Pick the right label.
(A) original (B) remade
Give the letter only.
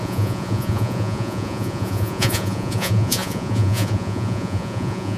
B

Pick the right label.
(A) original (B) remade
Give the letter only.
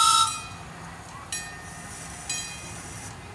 A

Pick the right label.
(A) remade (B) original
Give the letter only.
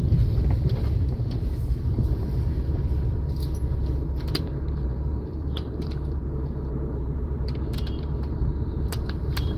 A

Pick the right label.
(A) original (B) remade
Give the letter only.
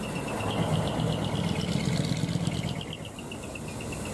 A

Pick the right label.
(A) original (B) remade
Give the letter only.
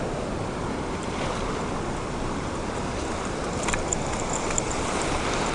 A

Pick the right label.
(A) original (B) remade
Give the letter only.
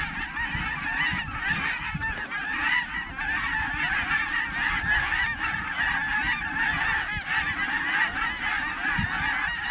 A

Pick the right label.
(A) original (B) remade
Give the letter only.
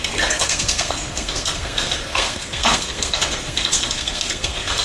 B